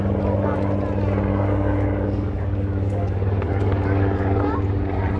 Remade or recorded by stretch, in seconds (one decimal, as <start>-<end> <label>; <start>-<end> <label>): 0.0-1.3 recorded; 1.3-4.4 remade; 4.4-5.2 recorded